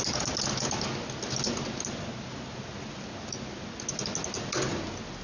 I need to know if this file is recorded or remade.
recorded